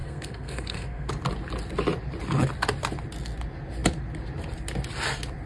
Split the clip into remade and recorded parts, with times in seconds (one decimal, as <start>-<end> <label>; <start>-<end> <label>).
0.0-1.1 remade; 1.1-5.5 recorded